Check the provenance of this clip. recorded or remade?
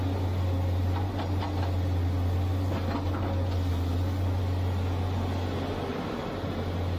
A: recorded